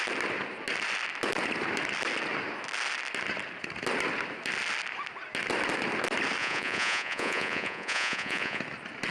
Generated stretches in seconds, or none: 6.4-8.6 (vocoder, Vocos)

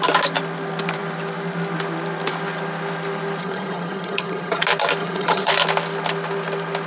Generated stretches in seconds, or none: 3.4-4.6 (vocoder, HiFi-GAN); 5.0-5.5

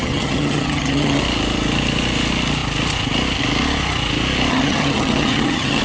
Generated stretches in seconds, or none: 0.0-1.2 (vocoder, HiFi-GAN); 4.5-5.8